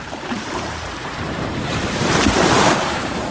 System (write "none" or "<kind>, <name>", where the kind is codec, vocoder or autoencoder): vocoder, BigVGAN v2